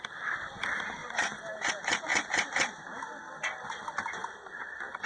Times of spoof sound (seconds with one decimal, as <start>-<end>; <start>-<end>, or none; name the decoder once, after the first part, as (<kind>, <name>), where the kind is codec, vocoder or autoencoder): 1.0-1.7 (vocoder, BigVGAN v2); 4.2-5.1